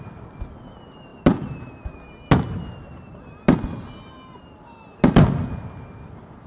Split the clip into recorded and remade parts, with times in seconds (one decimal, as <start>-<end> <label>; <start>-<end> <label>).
0.0-6.5 recorded